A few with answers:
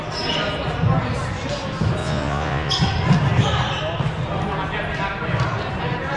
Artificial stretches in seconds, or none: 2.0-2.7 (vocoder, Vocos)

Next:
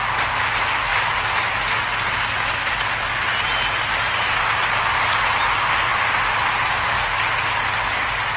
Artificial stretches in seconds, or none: none

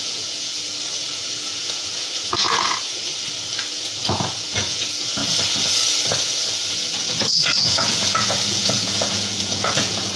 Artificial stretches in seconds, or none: 0.0-0.5 (vocoder, Vocos); 1.1-3.1; 3.7-5.2; 6.2-10.2

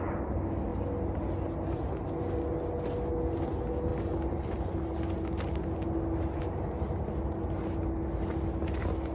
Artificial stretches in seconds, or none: none

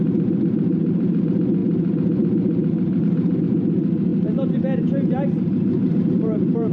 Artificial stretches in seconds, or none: 0.0-6.7 (vocoder, BigVGAN v2)